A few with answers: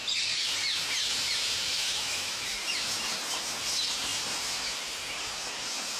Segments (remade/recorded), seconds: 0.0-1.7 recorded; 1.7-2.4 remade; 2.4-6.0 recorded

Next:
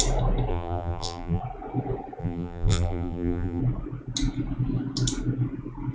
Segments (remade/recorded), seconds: 0.0-0.5 recorded; 0.5-1.4 remade; 1.4-2.2 recorded; 2.2-3.6 remade; 3.6-5.9 recorded

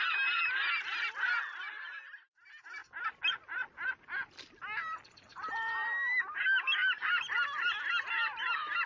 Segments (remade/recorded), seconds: 0.0-5.3 recorded; 5.3-5.9 remade; 5.9-8.9 recorded

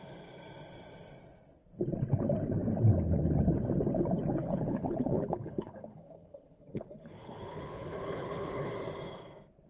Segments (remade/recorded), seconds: 0.0-4.4 recorded; 4.4-8.7 remade; 8.7-9.7 recorded